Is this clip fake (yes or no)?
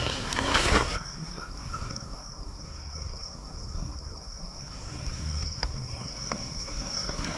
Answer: yes